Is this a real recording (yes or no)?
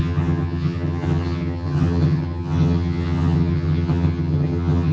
no